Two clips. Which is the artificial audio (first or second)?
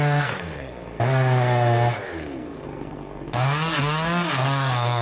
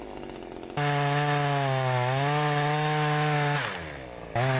first